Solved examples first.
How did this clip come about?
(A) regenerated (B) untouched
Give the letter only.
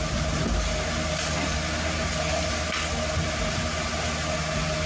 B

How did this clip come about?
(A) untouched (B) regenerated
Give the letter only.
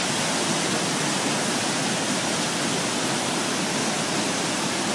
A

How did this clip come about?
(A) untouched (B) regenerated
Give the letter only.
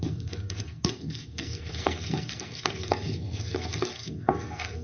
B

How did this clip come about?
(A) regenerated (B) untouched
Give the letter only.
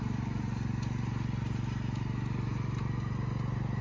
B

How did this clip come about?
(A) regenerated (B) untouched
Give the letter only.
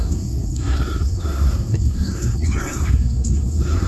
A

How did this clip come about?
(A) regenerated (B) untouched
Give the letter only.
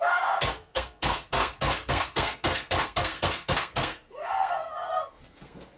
A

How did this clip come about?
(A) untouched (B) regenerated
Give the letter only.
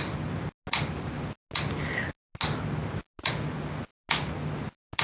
A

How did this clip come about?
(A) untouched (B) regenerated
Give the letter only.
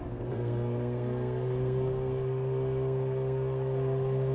B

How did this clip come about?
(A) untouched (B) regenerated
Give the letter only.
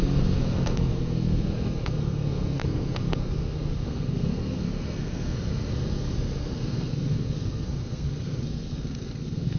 B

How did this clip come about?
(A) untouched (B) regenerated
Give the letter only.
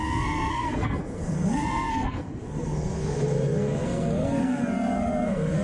B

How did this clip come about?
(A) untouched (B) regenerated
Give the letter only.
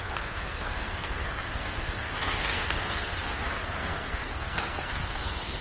B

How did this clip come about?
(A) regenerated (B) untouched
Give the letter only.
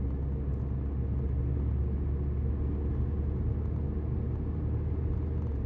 B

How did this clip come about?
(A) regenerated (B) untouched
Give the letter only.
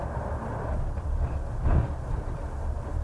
B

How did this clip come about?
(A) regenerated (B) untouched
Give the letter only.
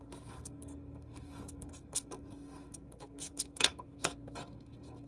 A